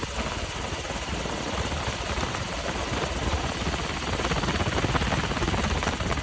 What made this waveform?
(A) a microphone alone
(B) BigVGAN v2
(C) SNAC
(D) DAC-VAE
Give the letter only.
A